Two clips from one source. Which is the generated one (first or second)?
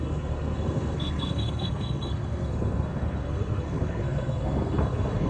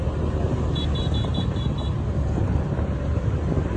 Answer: first